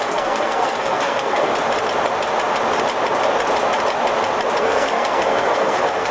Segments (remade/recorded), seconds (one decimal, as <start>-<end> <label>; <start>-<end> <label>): 0.0-1.5 remade; 1.5-4.6 recorded; 4.6-6.1 remade